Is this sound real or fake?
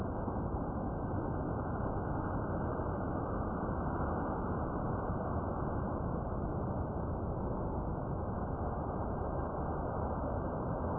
real